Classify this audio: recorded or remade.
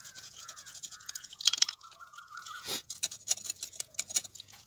remade